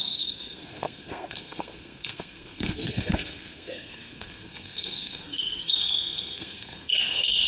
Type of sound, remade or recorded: remade